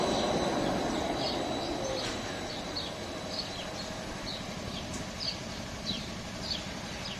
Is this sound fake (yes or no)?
no